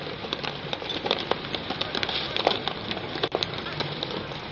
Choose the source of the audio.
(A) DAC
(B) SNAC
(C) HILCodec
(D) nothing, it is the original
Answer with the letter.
D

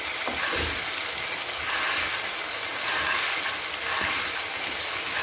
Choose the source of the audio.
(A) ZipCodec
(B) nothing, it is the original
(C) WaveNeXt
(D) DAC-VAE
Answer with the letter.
B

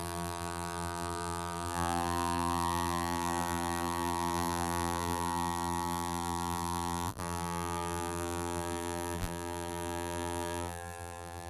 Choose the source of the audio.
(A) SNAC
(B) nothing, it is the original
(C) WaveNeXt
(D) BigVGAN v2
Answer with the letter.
D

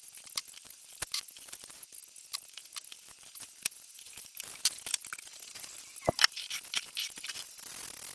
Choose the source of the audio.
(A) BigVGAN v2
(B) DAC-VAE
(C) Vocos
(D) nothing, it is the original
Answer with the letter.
D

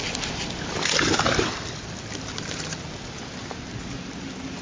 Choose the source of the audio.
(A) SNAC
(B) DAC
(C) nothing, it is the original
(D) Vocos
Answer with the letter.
C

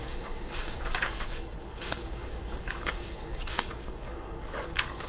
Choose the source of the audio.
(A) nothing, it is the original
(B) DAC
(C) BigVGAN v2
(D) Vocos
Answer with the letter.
B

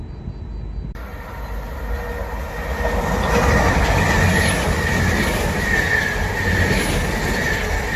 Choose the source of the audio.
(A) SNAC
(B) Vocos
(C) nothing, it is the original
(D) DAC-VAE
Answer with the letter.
C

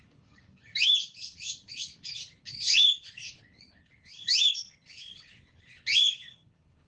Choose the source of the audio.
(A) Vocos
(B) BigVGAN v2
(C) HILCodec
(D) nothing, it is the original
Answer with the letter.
C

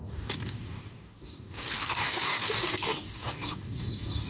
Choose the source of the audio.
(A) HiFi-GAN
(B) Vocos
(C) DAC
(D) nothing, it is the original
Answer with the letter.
C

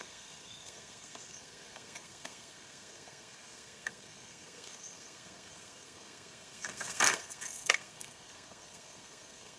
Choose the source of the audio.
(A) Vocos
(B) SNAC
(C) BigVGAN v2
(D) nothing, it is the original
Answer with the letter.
B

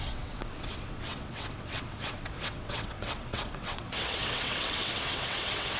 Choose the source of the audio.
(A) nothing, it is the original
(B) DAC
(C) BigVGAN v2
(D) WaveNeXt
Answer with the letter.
D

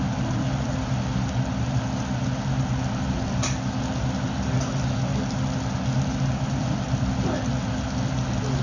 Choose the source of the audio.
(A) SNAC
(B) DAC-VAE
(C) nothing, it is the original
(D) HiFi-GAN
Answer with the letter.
C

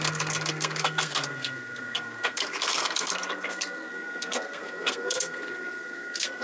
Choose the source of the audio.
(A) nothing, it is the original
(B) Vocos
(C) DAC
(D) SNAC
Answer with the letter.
D